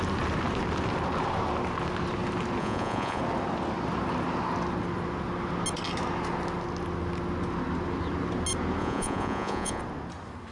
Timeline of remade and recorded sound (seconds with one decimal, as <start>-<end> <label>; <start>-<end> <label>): 0.0-2.6 recorded; 2.6-3.2 remade; 3.2-8.8 recorded; 8.8-9.8 remade; 9.8-10.5 recorded